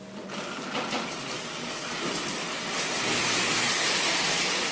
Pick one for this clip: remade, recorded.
recorded